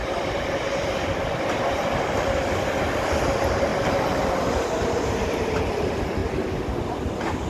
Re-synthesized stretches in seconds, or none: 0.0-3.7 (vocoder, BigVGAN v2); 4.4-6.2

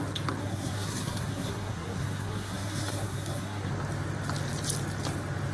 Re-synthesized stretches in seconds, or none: 0.4-3.7 (codec, SNAC)

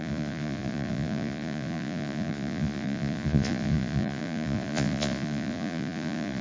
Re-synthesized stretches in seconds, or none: 0.0-6.4 (vocoder, Vocos)

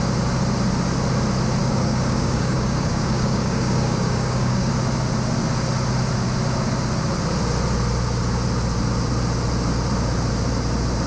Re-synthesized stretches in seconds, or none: 1.6-4.7 (codec, DAC)

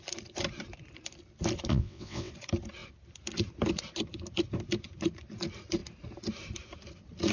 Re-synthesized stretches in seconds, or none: 1.7-2.3 (vocoder, WaveNeXt)

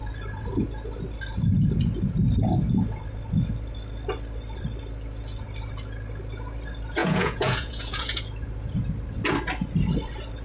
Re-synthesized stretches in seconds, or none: 7.0-8.2 (vocoder, Vocos)